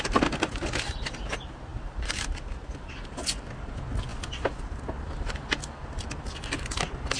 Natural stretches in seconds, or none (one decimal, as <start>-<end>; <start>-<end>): 0.0-7.2

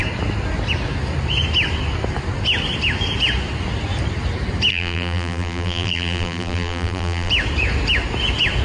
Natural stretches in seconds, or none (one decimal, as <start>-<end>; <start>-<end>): 0.0-4.7; 7.3-8.6

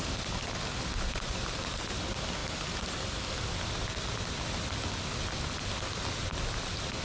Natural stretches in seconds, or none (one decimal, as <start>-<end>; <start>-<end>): 0.0-7.0

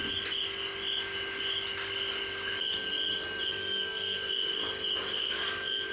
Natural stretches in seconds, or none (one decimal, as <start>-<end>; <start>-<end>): 0.0-3.5; 4.6-5.1

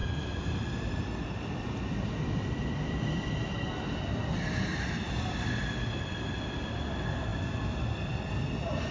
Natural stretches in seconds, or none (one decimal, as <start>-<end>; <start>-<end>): 0.0-4.7; 5.9-7.3; 8.3-8.9